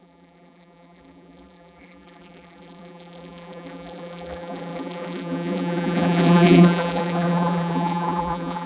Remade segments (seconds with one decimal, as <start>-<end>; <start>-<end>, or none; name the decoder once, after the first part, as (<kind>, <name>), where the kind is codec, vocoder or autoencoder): 0.0-8.7 (vocoder, BigVGAN v2)